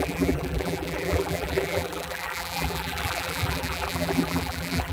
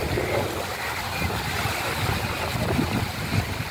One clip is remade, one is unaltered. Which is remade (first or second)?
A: first